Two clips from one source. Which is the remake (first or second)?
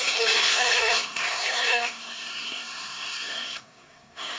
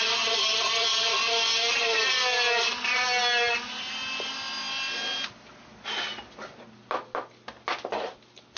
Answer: first